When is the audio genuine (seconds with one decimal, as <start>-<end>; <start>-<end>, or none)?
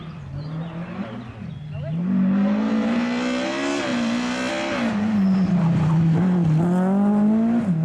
0.0-7.8